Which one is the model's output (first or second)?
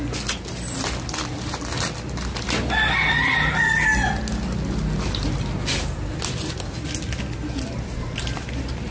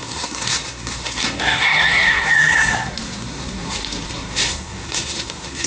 second